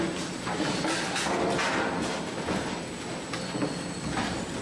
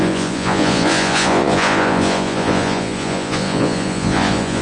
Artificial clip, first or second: second